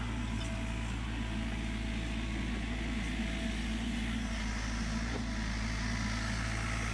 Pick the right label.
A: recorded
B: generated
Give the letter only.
A